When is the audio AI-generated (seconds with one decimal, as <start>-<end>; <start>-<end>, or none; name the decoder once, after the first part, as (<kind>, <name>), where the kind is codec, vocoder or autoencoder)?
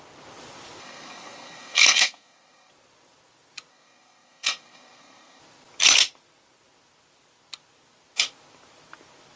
0.8-2.7 (codec, SNAC); 3.7-5.4